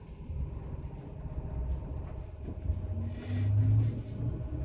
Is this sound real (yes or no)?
yes